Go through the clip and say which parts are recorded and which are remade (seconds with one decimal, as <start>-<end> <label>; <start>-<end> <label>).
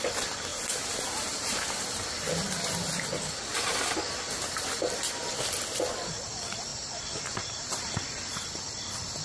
0.0-0.5 recorded; 0.5-2.3 remade; 2.3-6.7 recorded; 6.7-7.9 remade; 7.9-9.2 recorded